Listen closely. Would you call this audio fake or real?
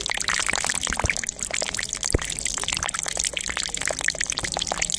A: real